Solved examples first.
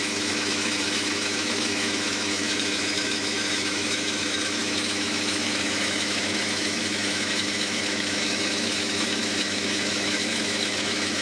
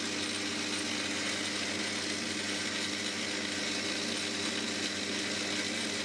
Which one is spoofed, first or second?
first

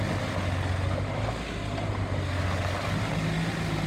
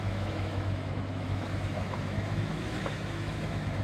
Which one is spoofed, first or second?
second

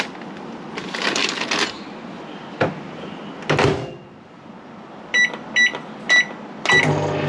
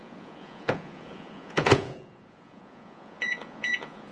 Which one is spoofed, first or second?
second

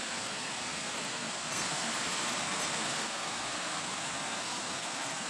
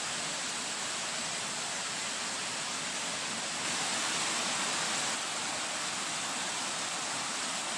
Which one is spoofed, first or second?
first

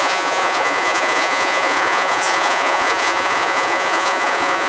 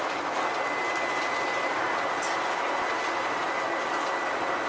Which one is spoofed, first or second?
first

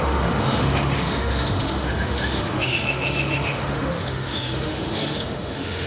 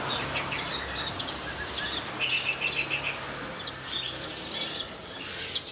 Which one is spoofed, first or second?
first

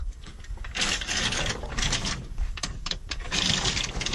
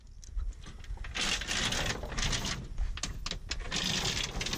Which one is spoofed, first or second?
first